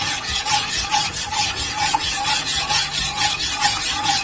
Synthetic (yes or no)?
yes